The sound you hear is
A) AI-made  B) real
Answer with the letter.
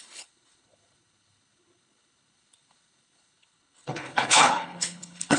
A